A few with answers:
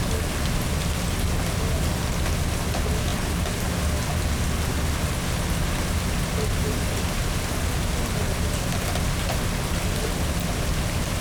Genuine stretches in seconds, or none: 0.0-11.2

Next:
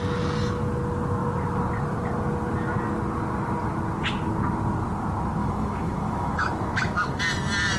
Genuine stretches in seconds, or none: 0.0-5.4; 7.2-7.8

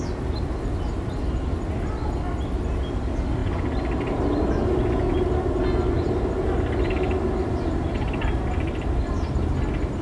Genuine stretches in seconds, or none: 0.0-10.0

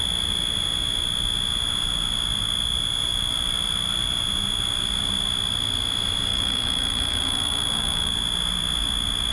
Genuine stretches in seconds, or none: 0.0-6.3; 8.1-9.3

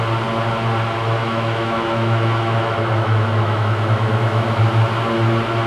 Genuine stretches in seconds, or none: 0.0-1.2; 4.6-5.7

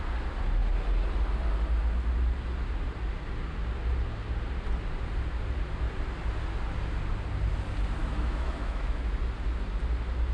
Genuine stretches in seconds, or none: 0.0-8.0; 9.1-10.3

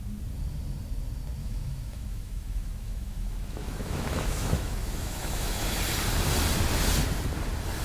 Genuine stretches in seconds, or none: 0.0-1.4; 5.8-7.8